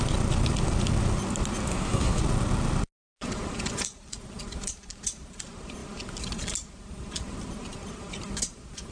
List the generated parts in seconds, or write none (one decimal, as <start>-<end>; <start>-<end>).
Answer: 1.7-2.2